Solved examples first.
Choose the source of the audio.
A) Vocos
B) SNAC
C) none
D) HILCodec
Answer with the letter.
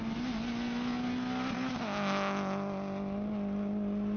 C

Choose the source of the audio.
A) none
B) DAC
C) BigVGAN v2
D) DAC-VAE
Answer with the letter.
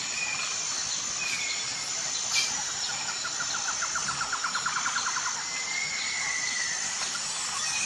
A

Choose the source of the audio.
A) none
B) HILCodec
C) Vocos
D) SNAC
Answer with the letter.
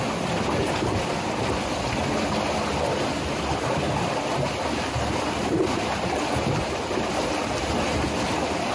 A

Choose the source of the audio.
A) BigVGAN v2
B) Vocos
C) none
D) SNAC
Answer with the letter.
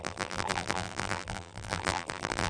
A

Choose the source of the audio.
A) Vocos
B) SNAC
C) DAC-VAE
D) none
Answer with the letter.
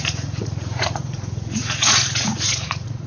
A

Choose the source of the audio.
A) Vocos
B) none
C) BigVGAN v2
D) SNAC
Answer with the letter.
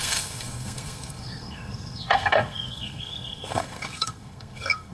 D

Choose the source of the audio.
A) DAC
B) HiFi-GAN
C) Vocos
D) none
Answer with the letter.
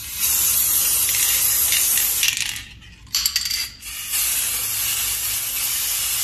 D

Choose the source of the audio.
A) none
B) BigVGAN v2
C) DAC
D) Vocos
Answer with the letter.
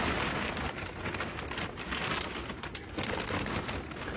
A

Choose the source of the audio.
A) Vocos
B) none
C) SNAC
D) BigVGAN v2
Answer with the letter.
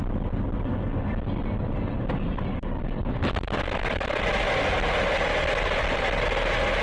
B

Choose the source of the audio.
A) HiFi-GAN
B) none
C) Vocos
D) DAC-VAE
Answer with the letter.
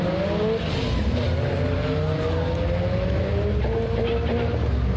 B